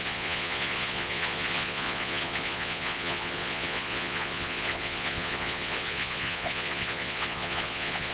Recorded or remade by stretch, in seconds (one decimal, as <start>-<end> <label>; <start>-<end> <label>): 0.0-8.1 remade